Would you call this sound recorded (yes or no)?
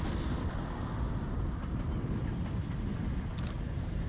yes